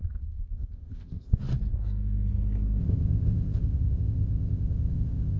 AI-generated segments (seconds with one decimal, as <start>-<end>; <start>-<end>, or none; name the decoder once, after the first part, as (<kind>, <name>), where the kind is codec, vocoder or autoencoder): 0.0-1.4 (codec, ZipCodec); 2.8-5.4